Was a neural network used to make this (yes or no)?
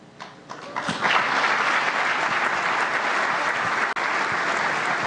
no